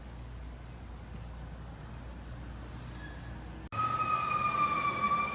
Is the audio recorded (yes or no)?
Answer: yes